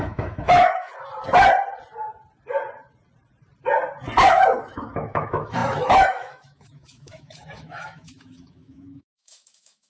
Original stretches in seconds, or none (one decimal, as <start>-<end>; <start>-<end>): 0.9-4.3

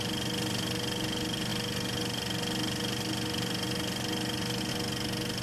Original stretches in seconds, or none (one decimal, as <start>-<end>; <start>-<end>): 0.0-5.4

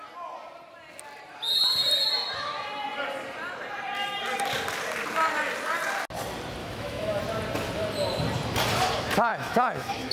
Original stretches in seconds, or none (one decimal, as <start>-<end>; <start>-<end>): 0.0-6.6; 7.2-9.3

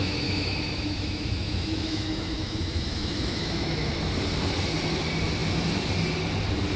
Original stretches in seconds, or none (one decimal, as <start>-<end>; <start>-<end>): 3.9-6.8